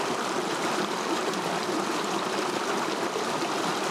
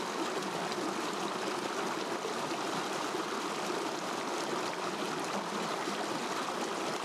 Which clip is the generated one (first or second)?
first